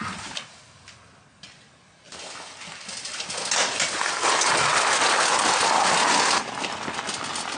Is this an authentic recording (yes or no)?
yes